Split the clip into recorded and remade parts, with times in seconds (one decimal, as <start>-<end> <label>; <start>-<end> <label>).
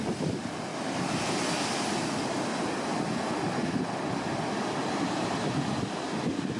0.0-0.7 remade; 0.7-4.1 recorded; 4.1-6.6 remade